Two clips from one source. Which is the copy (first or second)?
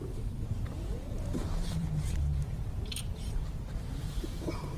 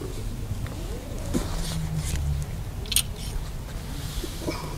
first